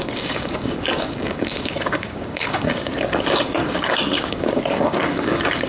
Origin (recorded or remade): remade